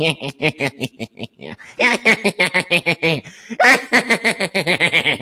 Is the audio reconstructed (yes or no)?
no